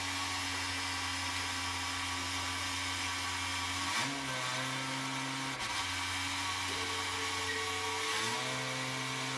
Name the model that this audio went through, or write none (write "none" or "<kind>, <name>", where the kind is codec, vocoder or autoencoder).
none